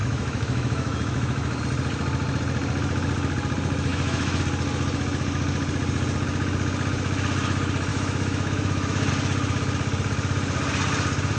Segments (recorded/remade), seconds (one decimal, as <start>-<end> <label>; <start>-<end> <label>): 0.0-1.6 remade; 1.6-3.9 recorded; 3.9-4.4 remade; 4.4-7.9 recorded; 7.9-9.1 remade; 9.1-11.4 recorded